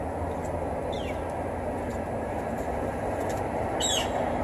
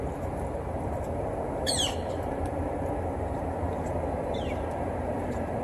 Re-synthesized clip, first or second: second